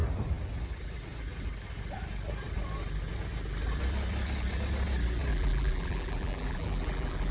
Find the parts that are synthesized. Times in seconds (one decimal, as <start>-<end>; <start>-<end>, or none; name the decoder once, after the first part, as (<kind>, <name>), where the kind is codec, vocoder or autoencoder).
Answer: 5.3-7.3 (vocoder, BigVGAN v2)